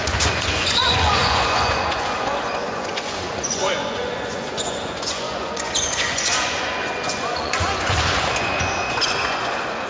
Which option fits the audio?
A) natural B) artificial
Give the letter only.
B